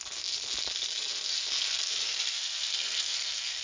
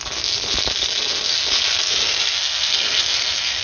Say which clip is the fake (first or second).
first